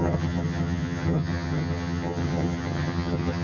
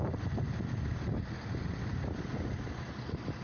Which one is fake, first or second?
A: first